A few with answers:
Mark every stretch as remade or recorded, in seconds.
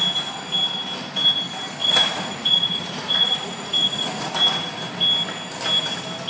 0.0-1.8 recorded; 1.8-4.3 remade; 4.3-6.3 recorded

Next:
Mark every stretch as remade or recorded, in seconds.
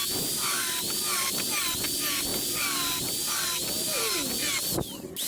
0.0-5.3 recorded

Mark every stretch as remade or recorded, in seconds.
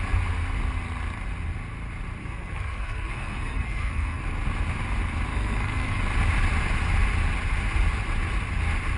0.0-2.2 recorded; 2.2-4.2 remade; 4.2-5.3 recorded; 5.3-6.0 remade; 6.0-9.0 recorded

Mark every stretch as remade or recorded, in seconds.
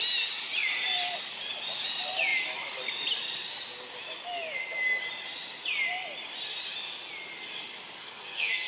0.0-8.0 recorded; 8.0-8.7 remade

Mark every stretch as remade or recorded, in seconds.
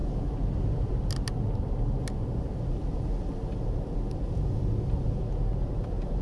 0.0-6.2 recorded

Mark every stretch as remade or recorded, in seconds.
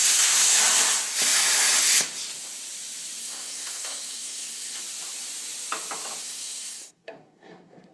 0.0-0.6 remade; 0.6-3.2 recorded; 3.2-4.8 remade; 4.8-6.2 recorded; 6.2-7.9 remade